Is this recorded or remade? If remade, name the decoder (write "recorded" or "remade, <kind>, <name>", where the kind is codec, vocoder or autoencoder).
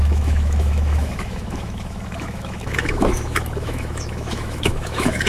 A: remade, autoencoder, DAC-VAE